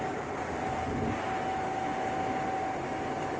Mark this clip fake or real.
real